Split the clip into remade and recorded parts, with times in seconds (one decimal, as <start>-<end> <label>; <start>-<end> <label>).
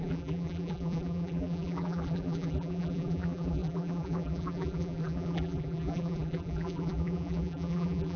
0.0-8.2 remade